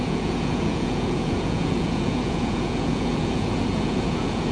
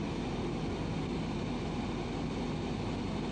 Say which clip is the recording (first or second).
second